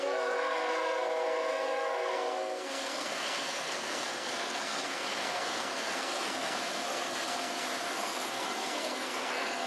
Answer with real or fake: fake